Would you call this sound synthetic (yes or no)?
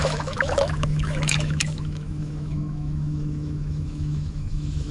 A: yes